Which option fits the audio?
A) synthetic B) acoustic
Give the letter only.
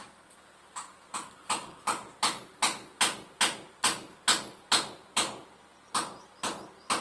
B